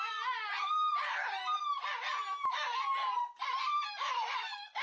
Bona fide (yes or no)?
yes